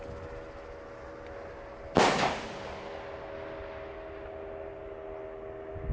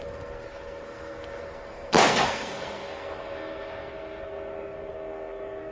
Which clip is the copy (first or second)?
second